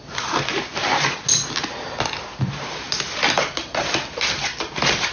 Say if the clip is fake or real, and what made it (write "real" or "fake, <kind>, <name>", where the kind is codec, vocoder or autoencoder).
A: real